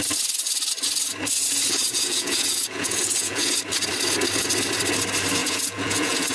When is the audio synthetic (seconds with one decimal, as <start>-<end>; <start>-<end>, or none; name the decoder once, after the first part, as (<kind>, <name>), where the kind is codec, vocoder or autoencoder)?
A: 1.8-3.5 (vocoder, Vocos); 5.4-6.3